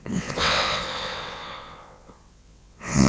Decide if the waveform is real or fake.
fake